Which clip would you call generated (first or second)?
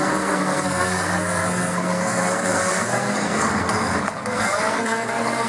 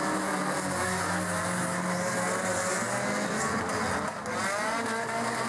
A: first